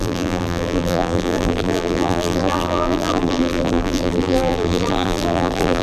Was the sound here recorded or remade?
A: remade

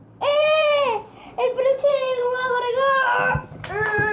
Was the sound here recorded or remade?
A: remade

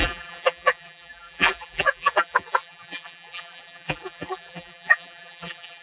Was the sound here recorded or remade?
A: remade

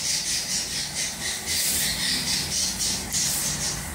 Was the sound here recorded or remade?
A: recorded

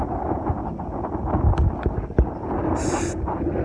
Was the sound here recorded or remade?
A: recorded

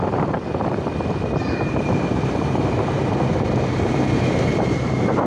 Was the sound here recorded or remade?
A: remade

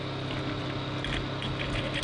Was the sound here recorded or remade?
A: recorded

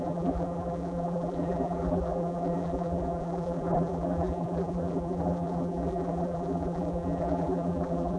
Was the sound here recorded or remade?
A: remade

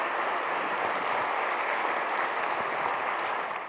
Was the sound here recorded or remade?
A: recorded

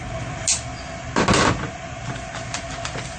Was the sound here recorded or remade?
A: recorded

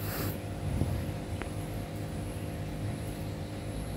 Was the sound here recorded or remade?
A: recorded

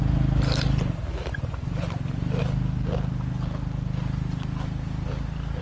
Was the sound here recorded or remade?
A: recorded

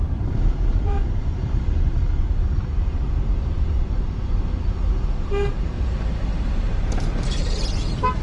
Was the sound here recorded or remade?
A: remade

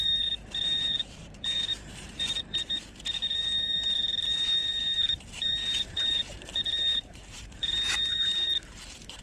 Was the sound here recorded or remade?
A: remade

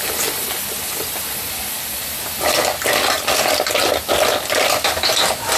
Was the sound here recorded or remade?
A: recorded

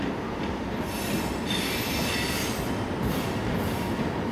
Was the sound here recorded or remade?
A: remade